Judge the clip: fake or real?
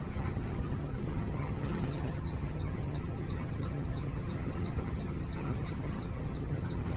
fake